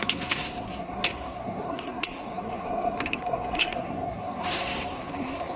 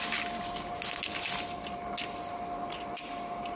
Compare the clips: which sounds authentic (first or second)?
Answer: second